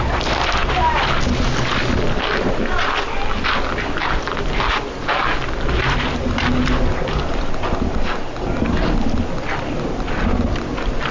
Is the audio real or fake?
real